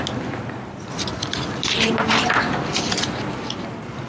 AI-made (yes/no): no